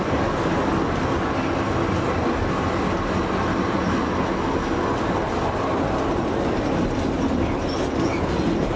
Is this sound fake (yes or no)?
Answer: no